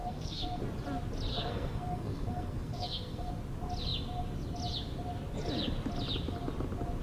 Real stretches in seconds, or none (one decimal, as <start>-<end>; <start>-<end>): 0.6-1.3; 3.3-7.0